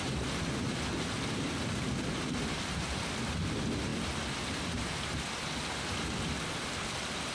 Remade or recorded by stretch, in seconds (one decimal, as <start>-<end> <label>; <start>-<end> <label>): 0.0-7.3 recorded